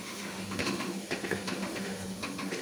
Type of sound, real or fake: fake